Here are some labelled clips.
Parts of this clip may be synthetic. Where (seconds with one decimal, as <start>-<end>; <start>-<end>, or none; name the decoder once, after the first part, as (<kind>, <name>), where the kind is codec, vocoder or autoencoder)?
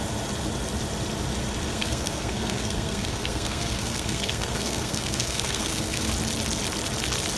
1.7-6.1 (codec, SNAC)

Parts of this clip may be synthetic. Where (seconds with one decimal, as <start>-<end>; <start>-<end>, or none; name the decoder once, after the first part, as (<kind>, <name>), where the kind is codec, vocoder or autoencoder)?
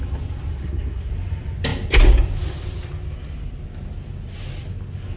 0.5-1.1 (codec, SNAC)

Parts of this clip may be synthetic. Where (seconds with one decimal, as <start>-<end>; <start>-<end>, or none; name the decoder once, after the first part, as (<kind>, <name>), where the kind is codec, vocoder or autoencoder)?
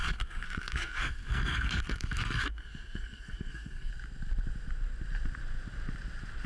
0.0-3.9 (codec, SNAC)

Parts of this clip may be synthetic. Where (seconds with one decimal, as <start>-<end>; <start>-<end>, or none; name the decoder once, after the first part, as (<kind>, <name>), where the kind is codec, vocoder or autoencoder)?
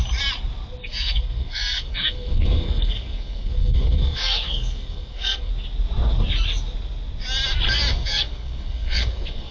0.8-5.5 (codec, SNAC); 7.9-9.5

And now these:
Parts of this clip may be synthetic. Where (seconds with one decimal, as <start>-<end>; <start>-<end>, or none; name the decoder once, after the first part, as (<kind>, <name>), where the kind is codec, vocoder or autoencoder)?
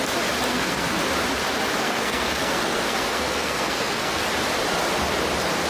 0.5-1.0 (codec, SNAC); 1.8-4.2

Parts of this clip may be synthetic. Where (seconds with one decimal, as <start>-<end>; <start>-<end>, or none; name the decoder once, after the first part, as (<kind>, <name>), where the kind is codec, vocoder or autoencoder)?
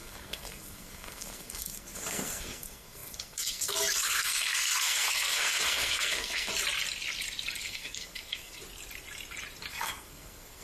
0.0-6.5 (codec, SNAC); 7.6-8.6; 9.7-10.6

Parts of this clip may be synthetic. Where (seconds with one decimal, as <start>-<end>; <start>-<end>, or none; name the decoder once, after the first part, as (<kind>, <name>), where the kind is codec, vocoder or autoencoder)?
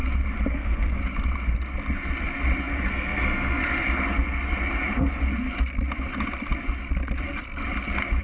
0.5-1.0 (codec, SNAC); 2.9-3.6